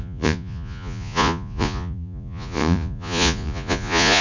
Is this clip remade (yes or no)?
yes